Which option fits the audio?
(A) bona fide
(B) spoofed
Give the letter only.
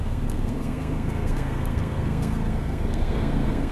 B